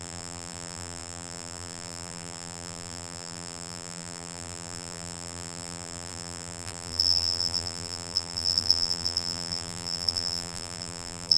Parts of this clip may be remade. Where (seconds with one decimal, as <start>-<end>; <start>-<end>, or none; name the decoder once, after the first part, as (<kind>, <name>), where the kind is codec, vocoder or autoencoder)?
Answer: 0.0-11.4 (vocoder, BigVGAN v2)